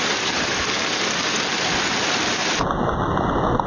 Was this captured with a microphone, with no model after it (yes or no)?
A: yes